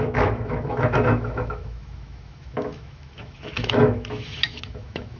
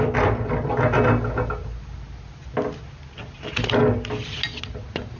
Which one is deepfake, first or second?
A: first